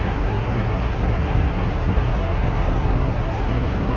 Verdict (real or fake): fake